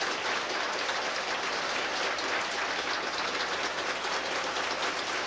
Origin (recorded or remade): recorded